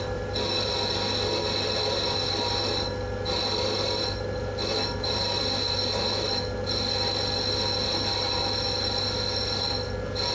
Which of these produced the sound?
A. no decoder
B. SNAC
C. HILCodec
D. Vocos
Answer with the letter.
A